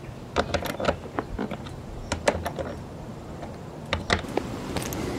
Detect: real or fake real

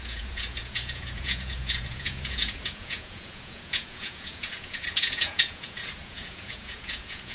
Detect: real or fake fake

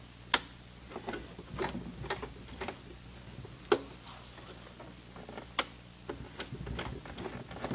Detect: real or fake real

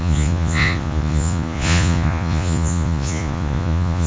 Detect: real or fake fake